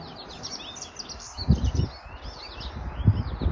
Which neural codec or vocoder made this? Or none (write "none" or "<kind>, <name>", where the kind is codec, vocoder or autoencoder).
none